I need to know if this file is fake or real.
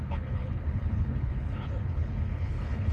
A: fake